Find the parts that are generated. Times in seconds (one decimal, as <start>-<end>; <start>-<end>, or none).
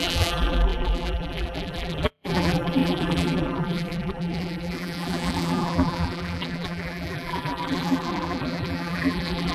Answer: 0.0-9.5